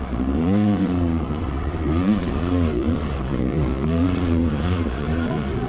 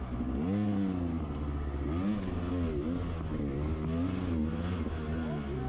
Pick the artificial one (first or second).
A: first